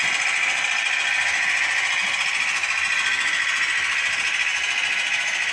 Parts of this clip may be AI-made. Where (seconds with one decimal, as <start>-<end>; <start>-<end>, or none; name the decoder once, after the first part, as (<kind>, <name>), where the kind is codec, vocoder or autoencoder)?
none